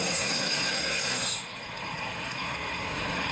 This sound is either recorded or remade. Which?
remade